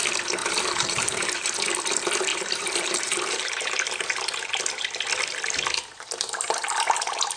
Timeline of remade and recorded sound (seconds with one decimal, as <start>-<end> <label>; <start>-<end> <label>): 0.0-0.4 recorded; 0.4-1.5 remade; 1.5-2.3 recorded; 2.3-4.5 remade; 4.5-7.4 recorded